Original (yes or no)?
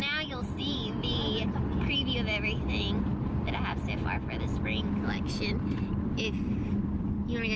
yes